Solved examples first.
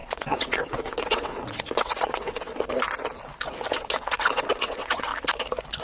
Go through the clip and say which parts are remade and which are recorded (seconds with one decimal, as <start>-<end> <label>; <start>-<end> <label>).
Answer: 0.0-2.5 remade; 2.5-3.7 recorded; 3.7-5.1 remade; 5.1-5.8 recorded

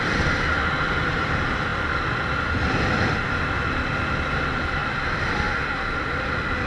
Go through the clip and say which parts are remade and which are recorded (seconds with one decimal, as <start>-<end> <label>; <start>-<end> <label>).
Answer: 0.0-6.7 recorded

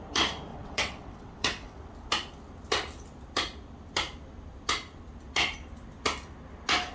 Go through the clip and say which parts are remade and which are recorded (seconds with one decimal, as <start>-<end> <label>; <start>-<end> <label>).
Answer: 0.0-0.5 recorded; 0.5-1.9 remade; 1.9-6.9 recorded

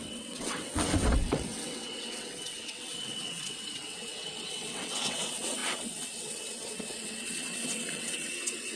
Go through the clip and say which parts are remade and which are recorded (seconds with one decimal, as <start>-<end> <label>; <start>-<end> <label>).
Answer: 0.0-8.8 remade